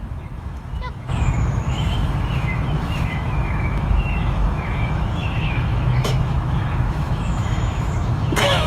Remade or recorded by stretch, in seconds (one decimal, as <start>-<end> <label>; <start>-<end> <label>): 0.0-8.7 remade